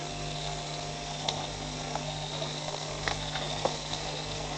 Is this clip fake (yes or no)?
yes